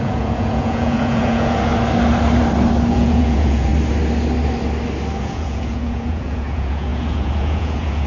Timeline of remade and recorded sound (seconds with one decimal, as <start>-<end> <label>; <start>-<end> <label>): 0.0-1.7 remade; 1.7-2.9 recorded; 2.9-3.7 remade; 3.7-5.2 recorded; 5.2-8.1 remade